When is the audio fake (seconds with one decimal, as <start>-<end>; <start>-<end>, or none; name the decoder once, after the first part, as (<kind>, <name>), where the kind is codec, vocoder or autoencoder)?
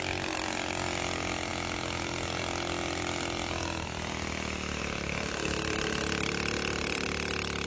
none